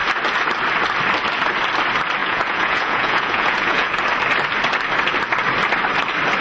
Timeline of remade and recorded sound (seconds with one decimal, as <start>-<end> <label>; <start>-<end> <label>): 0.0-2.2 recorded; 2.2-4.0 remade; 4.0-6.4 recorded